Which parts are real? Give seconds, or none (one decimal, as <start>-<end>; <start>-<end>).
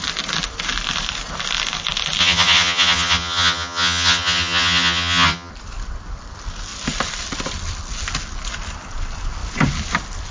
0.0-2.2; 5.5-10.3